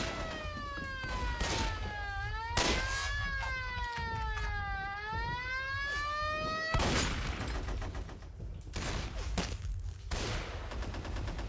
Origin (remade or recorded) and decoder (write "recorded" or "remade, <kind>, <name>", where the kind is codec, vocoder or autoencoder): recorded